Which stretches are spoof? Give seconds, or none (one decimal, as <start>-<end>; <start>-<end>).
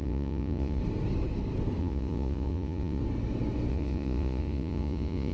0.0-0.8; 1.8-3.0; 3.7-5.3